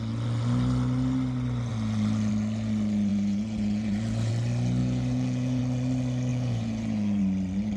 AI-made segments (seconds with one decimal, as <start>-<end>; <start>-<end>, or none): 3.1-4.3; 4.8-5.6; 6.3-7.2